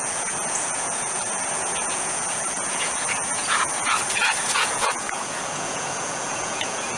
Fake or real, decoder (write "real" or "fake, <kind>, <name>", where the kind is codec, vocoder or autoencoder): fake, vocoder, Vocos